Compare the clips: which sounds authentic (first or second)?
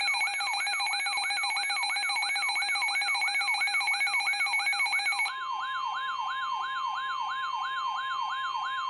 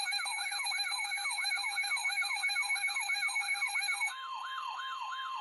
first